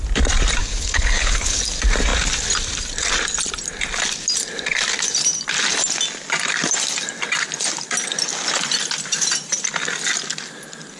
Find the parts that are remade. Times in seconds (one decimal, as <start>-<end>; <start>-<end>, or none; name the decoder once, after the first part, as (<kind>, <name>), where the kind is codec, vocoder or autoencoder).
0.6-1.6 (codec, HILCodec)